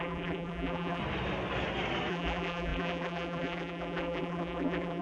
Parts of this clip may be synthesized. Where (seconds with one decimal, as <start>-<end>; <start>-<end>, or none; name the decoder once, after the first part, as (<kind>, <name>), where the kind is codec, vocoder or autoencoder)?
0.0-1.0 (vocoder, BigVGAN v2); 2.1-5.0